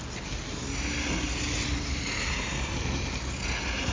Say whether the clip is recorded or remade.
recorded